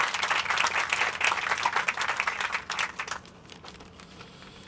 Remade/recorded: recorded